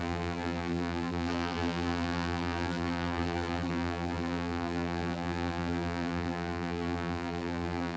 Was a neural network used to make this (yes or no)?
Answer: yes